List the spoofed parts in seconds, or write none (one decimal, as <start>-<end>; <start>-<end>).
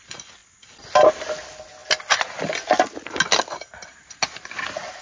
none